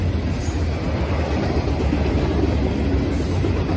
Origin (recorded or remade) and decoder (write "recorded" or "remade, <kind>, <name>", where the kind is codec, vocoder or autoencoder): recorded